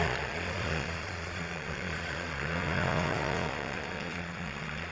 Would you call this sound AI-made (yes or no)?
yes